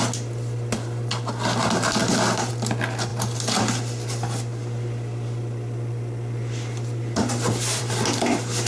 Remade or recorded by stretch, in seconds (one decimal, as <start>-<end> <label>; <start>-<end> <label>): 0.0-8.7 recorded